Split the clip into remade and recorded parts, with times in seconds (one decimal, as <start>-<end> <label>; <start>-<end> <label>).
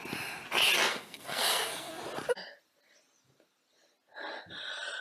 0.0-0.9 recorded; 0.9-1.9 remade; 1.9-5.0 recorded